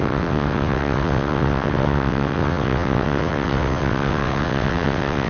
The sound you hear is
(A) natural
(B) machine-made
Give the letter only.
B